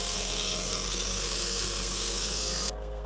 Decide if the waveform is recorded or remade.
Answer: remade